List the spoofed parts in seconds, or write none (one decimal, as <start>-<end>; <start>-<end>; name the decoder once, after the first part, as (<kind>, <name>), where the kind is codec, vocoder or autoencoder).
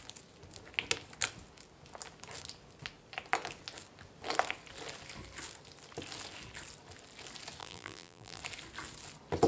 7.6-8.4 (vocoder, BigVGAN v2)